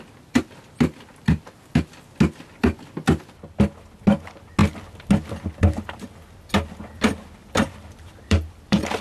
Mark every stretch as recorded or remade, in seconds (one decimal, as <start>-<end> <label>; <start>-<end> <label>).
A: 0.0-7.4 recorded; 7.4-9.0 remade